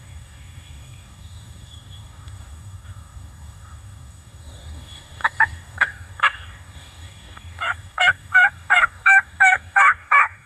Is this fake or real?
fake